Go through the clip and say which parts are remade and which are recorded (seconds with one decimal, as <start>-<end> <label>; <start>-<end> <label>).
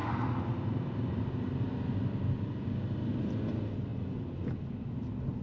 0.0-5.4 recorded